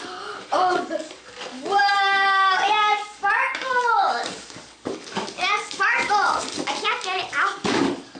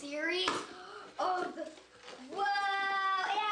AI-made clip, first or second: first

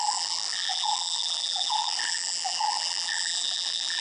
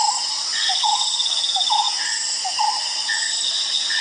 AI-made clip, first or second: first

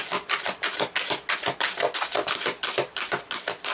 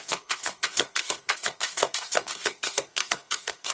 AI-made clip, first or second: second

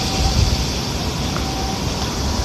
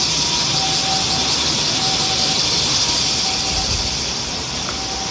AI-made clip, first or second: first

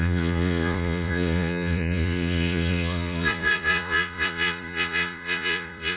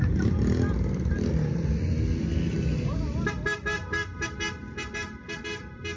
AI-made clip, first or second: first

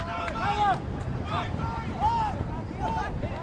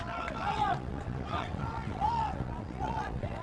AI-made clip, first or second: second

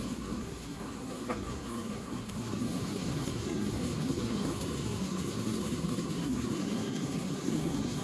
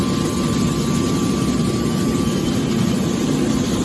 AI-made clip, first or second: first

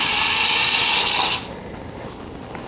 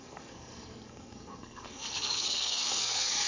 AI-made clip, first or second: second